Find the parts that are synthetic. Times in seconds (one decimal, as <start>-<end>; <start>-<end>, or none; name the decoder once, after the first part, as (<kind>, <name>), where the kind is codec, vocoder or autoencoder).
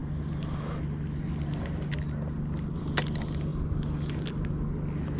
none